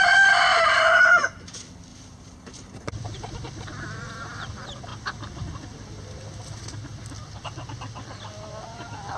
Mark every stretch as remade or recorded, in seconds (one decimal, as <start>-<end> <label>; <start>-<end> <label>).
0.0-0.5 recorded; 0.5-1.0 remade; 1.0-1.9 recorded; 1.9-2.9 remade; 2.9-9.2 recorded